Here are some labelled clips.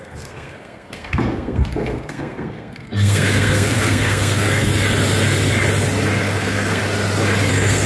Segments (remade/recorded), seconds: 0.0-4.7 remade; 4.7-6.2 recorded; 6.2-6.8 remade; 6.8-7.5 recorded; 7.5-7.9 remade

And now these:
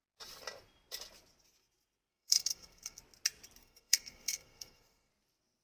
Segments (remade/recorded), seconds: 0.0-2.1 recorded; 2.1-3.0 remade; 3.0-3.6 recorded; 3.6-5.1 remade; 5.1-5.6 recorded

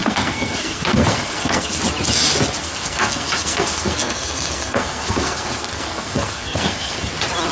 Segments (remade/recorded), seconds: 0.0-1.8 remade; 1.8-2.6 recorded; 2.6-7.1 remade; 7.1-7.5 recorded

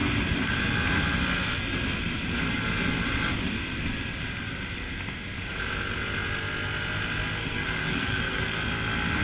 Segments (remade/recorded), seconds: 0.0-7.4 recorded; 7.4-8.6 remade; 8.6-9.2 recorded

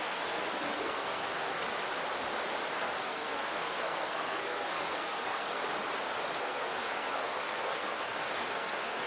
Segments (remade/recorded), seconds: 0.0-1.6 remade; 1.6-2.7 recorded; 2.7-5.6 remade; 5.6-6.4 recorded; 6.4-9.1 remade

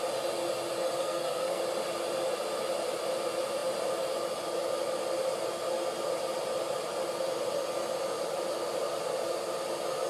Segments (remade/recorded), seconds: 0.0-1.0 recorded; 1.0-1.6 remade; 1.6-10.1 recorded

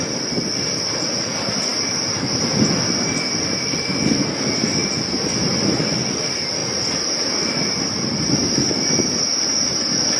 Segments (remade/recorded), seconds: 0.0-10.2 recorded

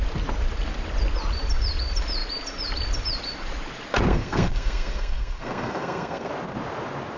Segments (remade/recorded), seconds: 0.0-4.1 recorded; 4.1-6.3 remade; 6.3-7.2 recorded